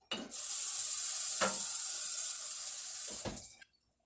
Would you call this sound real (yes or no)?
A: yes